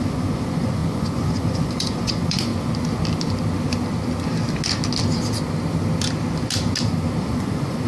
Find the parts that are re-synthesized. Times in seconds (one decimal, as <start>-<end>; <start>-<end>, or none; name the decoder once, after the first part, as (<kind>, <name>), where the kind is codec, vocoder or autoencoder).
0.0-2.5 (vocoder, Vocos); 7.2-7.9